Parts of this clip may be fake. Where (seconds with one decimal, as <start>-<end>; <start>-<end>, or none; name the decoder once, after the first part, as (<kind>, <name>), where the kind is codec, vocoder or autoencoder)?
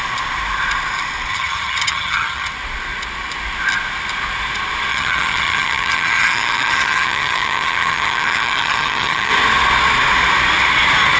1.3-2.5 (vocoder, HiFi-GAN); 4.9-9.3